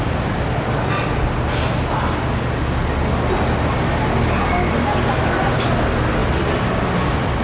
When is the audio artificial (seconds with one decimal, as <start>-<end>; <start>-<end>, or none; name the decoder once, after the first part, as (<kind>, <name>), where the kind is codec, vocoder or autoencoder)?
none